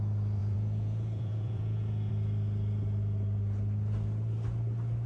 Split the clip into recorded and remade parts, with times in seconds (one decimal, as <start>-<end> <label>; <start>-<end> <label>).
0.0-0.4 recorded; 0.4-2.1 remade; 2.1-5.1 recorded